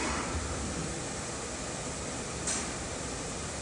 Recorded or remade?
recorded